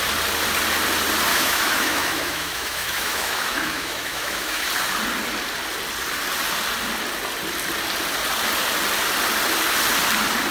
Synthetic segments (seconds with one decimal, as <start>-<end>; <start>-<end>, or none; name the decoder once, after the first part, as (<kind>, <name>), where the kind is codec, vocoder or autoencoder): 1.3-4.7 (autoencoder, DAC-VAE)